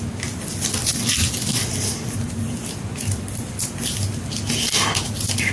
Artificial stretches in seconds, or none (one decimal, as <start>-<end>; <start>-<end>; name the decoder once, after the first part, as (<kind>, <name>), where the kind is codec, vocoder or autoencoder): none